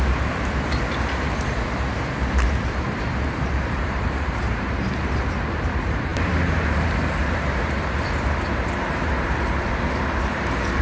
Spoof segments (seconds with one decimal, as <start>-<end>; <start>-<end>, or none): 0.0-10.8